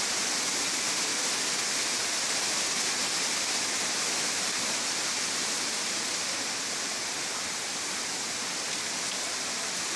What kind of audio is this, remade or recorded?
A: recorded